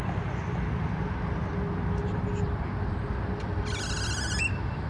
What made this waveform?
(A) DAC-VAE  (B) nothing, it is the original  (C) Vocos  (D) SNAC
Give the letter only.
B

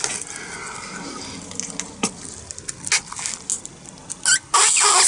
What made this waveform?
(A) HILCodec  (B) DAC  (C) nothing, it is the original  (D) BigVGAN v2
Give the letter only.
C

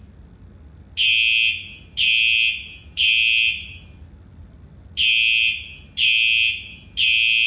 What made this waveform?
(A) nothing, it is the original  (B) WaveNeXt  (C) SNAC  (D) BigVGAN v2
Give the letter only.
A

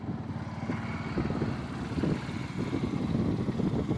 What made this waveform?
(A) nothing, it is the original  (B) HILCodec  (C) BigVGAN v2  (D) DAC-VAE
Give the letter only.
A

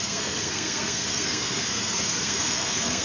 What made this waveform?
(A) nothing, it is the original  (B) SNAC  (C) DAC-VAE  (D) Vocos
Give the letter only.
B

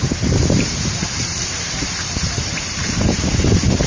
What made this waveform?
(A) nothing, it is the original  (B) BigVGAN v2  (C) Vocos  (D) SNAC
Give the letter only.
B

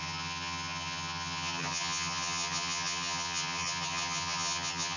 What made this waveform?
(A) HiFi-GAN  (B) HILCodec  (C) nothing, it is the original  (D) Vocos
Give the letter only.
A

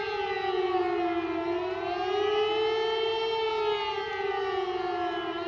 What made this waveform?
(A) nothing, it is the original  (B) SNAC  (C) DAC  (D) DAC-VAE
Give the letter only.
A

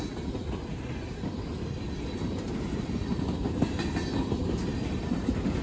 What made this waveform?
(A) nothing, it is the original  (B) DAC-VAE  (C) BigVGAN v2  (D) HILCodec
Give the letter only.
A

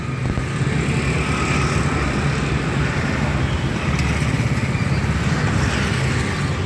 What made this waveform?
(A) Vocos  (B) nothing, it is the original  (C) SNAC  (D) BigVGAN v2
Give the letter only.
B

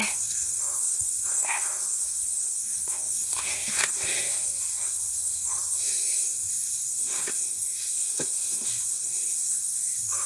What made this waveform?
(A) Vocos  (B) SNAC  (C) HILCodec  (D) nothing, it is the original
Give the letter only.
B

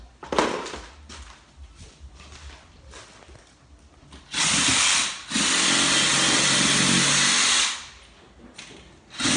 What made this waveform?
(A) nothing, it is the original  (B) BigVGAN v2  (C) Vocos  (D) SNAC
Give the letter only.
A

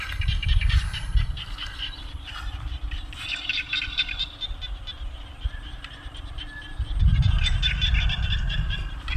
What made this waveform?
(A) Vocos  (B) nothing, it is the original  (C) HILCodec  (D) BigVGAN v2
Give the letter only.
B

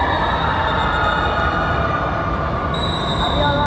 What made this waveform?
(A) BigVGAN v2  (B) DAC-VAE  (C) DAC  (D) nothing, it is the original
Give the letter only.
D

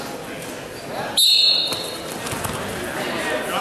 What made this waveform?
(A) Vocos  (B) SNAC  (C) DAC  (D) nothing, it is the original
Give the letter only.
D